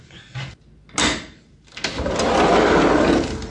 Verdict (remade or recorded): recorded